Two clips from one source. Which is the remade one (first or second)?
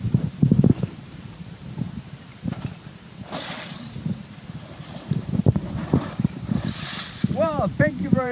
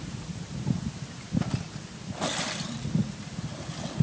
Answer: first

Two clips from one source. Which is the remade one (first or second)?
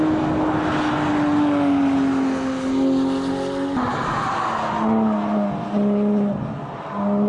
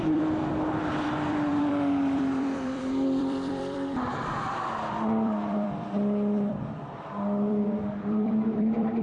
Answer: second